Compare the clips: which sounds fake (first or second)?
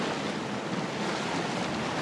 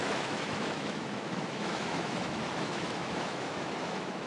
second